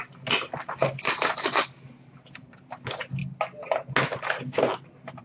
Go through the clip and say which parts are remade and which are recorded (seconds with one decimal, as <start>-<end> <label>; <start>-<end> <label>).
0.0-5.2 recorded